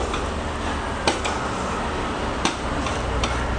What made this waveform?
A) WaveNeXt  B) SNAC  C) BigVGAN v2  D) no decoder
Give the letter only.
D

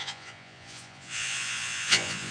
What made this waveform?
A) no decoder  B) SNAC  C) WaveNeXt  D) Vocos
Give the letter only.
D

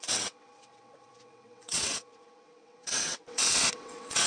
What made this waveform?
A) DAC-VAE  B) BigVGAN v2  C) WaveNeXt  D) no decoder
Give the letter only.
C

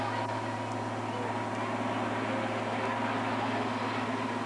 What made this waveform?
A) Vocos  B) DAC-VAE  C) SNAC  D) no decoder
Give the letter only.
D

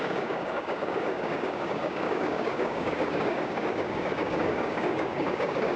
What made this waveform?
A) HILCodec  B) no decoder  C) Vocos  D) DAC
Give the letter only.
D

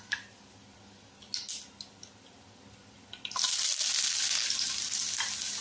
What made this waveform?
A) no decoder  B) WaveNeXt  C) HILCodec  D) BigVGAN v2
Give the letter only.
A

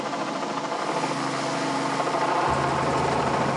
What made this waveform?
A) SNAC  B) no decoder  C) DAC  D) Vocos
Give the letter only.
B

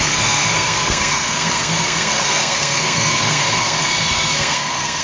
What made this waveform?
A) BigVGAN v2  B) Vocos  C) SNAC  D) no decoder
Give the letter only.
C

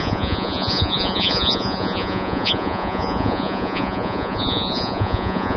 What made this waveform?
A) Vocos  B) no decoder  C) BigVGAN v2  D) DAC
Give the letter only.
A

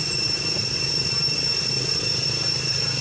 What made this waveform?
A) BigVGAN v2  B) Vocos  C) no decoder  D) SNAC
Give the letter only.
C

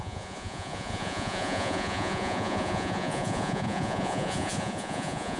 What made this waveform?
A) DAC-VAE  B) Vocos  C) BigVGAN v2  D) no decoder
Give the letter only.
B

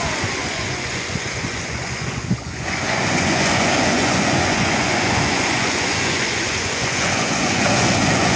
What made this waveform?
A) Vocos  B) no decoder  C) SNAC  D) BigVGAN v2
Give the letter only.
A